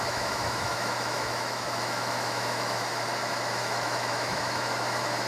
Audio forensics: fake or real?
fake